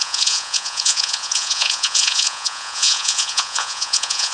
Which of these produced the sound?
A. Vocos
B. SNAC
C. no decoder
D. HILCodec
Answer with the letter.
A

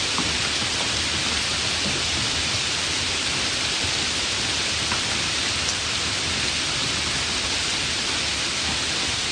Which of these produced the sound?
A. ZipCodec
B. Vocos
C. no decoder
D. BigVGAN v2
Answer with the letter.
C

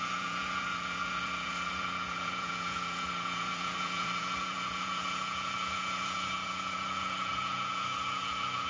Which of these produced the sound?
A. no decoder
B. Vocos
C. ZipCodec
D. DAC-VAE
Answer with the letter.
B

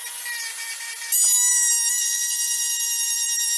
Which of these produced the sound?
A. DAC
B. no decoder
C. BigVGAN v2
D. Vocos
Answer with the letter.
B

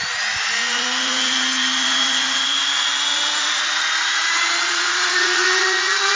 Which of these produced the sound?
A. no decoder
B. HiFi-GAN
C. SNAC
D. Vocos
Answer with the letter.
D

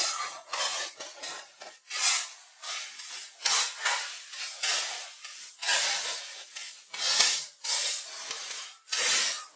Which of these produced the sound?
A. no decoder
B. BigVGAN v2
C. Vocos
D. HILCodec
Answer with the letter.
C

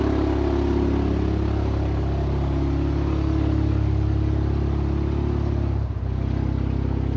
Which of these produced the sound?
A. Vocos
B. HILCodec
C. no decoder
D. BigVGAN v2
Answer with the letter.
C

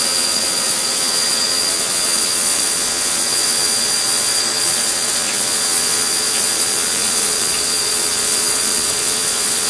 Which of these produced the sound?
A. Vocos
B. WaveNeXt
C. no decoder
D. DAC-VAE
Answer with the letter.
A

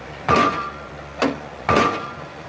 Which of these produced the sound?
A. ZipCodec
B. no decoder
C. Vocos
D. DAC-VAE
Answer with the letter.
C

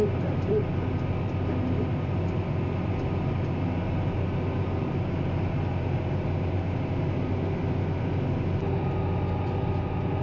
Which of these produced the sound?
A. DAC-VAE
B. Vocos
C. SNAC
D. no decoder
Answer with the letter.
D